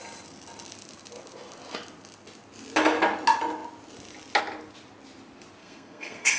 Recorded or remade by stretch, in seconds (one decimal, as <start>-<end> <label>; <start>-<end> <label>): 0.0-5.6 recorded; 5.6-6.4 remade